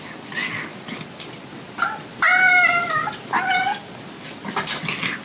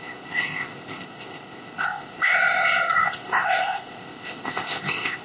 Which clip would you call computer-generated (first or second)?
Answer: second